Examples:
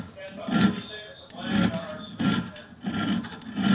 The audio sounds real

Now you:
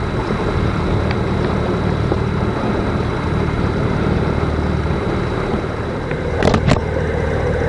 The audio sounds real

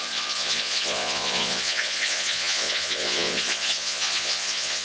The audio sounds fake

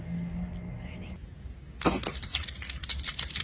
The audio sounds real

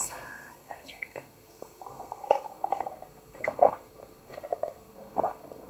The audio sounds fake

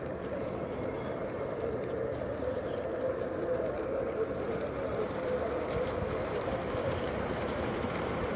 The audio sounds fake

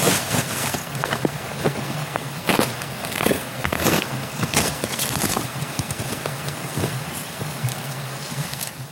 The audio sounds fake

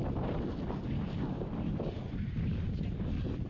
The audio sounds real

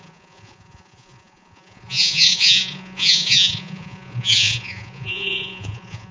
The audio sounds fake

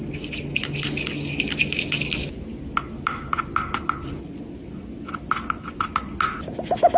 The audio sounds real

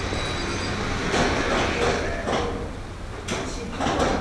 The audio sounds real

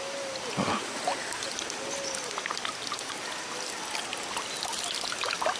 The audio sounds real